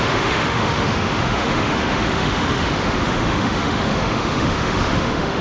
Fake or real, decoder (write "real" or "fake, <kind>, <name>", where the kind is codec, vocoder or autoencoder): fake, autoencoder, DAC-VAE